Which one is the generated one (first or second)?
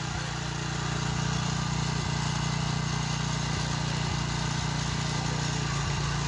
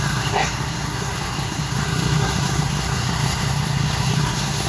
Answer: second